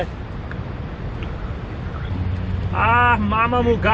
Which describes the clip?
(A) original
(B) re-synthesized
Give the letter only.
A